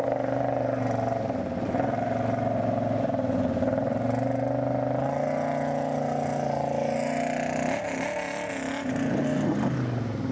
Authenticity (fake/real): real